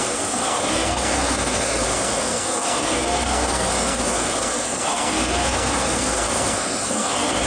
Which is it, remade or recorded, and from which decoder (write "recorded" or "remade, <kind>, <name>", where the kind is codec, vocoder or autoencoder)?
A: remade, codec, SNAC